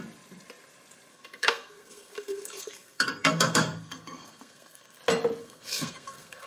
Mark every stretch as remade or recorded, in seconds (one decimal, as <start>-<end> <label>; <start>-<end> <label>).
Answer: 0.0-1.1 recorded; 1.1-5.0 remade; 5.0-5.4 recorded; 5.4-6.5 remade